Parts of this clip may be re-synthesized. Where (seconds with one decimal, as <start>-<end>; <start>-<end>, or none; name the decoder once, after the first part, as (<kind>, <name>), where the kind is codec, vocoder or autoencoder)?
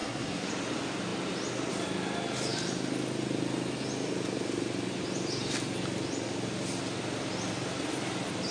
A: 0.0-0.5 (codec, SNAC)